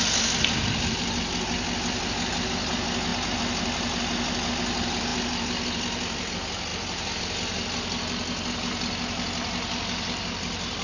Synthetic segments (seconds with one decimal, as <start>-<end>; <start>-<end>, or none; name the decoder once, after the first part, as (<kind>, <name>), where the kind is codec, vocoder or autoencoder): none